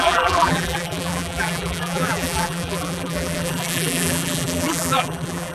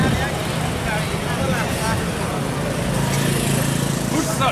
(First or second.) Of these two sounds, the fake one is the first